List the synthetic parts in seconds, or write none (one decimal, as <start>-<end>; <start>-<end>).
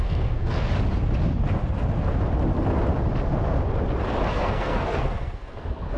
0.0-0.7; 4.3-6.0